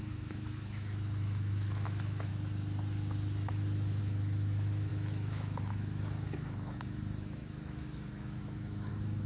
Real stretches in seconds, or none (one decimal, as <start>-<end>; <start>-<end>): 2.3-4.0